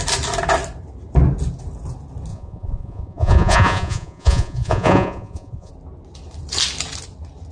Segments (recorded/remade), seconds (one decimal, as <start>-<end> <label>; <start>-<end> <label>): 0.0-2.3 recorded; 2.3-5.7 remade; 5.7-7.5 recorded